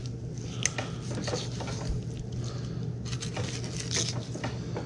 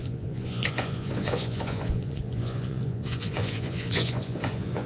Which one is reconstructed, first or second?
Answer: second